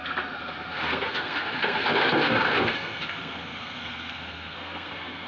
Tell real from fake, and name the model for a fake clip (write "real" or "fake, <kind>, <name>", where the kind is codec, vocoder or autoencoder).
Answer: fake, codec, SNAC